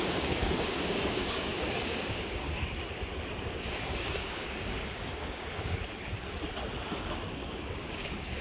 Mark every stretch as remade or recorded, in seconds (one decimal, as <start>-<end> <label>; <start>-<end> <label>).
0.0-2.4 remade; 2.4-3.5 recorded; 3.5-6.1 remade; 6.1-6.9 recorded; 6.9-8.4 remade